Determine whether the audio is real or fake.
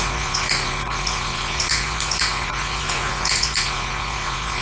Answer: fake